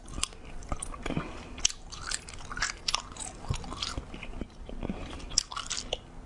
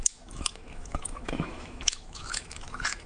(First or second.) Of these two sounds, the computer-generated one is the second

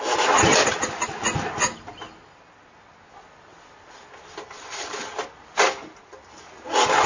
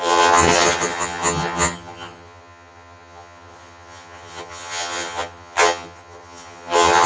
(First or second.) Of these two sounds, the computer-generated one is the second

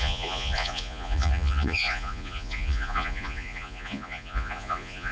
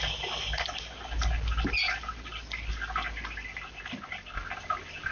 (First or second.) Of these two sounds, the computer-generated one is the first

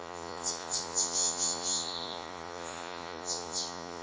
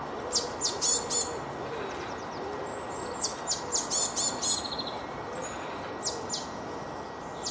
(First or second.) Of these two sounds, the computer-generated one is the first